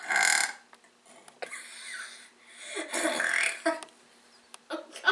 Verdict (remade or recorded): recorded